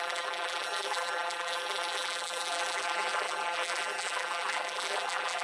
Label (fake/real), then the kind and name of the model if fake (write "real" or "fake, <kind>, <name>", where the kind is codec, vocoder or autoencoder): fake, vocoder, BigVGAN v2